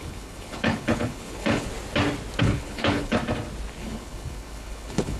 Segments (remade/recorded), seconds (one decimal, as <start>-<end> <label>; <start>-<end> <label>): 0.0-1.7 remade; 1.7-2.4 recorded; 2.4-3.2 remade; 3.2-3.8 recorded; 3.8-5.2 remade